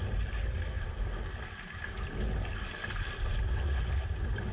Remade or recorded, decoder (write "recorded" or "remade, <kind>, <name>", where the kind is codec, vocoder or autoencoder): recorded